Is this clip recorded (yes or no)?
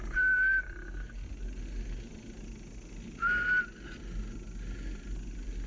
yes